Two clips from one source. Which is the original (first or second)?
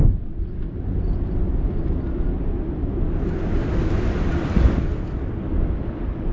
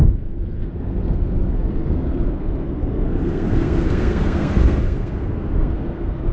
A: first